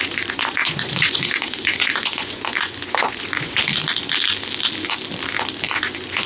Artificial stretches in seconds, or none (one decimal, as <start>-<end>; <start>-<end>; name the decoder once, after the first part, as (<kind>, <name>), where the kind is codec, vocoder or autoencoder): 0.0-3.6 (vocoder, Vocos); 5.7-6.3